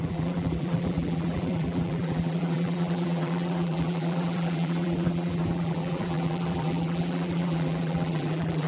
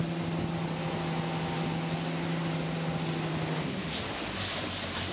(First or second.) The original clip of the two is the second